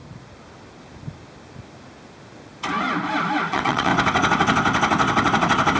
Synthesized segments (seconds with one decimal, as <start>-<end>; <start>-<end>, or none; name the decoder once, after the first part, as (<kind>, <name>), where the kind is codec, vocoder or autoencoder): 3.5-3.9 (vocoder, WaveNeXt)